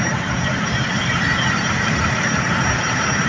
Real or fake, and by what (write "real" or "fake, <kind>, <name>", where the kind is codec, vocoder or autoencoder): real